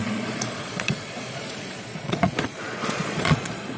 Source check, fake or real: fake